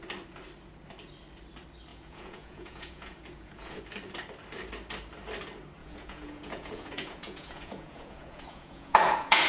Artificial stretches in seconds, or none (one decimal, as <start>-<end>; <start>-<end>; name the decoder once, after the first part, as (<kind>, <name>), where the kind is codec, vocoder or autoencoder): 1.9-3.8 (vocoder, Vocos); 5.8-9.5